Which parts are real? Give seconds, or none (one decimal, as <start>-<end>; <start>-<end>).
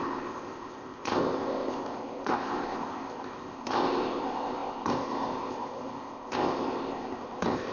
none